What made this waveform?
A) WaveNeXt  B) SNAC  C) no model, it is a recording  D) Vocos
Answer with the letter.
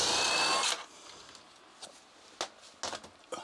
C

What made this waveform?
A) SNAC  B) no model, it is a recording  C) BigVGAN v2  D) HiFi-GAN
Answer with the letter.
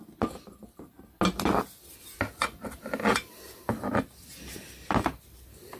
B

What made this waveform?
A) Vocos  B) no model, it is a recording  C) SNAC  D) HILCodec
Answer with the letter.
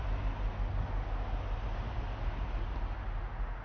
B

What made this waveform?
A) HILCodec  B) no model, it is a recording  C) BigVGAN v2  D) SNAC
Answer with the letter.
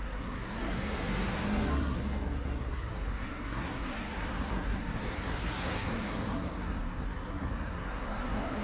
D